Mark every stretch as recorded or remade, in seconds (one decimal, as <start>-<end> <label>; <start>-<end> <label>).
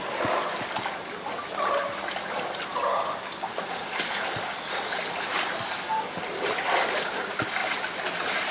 0.0-8.5 recorded